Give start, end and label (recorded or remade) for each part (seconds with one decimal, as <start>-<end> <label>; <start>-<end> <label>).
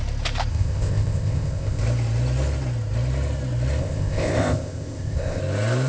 0.0-0.5 recorded; 0.5-1.8 remade; 1.8-3.8 recorded; 3.8-5.4 remade; 5.4-5.9 recorded